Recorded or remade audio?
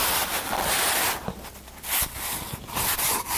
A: recorded